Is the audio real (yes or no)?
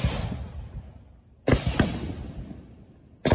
yes